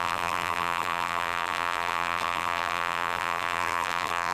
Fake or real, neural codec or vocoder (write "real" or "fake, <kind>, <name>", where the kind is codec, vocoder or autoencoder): fake, vocoder, BigVGAN v2